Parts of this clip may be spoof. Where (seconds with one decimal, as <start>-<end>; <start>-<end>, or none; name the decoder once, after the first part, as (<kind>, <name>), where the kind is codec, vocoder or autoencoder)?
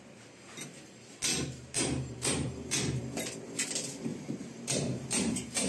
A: 1.3-3.0 (vocoder, BigVGAN v2); 4.1-5.7